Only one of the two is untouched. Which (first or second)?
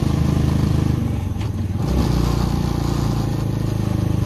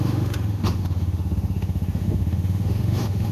first